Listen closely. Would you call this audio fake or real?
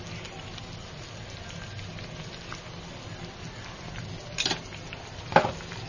real